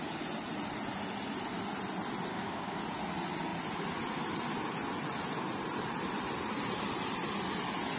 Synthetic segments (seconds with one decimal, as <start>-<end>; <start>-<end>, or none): 2.3-2.8